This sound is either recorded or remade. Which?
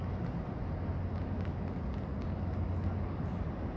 recorded